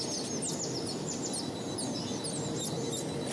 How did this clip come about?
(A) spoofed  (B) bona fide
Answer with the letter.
B